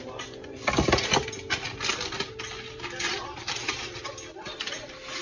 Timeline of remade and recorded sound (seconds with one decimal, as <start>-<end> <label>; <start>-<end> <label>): 0.0-3.2 recorded; 3.2-3.7 remade; 3.7-5.2 recorded